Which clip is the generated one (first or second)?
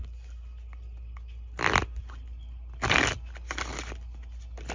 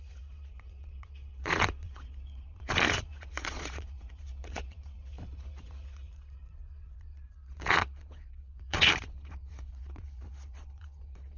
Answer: second